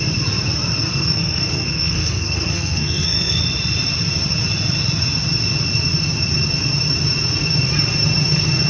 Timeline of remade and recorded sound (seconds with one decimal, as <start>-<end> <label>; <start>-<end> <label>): 0.0-0.9 recorded; 0.9-3.4 remade; 3.4-8.7 recorded